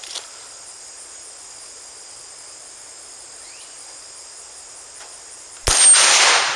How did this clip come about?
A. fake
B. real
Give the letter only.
B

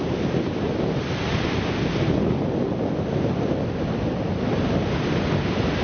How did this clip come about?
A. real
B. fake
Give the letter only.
A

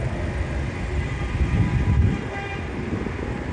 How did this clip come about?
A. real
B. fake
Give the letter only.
A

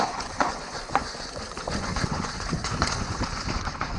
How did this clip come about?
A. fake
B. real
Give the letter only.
A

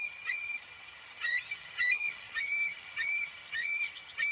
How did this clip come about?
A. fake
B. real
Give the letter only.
A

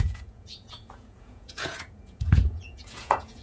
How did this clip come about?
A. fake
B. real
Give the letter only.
A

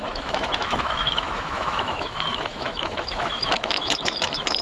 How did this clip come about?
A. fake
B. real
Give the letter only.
A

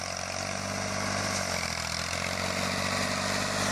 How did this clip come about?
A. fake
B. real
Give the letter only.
B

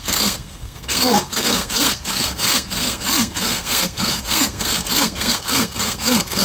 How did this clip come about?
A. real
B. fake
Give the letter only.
B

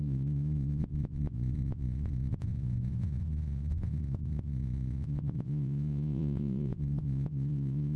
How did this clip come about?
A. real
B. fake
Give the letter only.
B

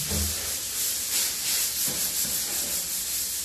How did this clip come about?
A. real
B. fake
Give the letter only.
A